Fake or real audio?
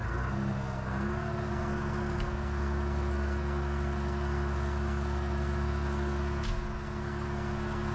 fake